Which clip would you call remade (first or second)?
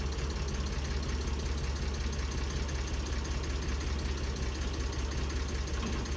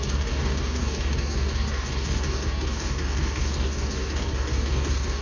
second